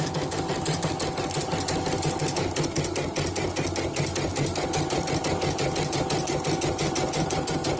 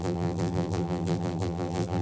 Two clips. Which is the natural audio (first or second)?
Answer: first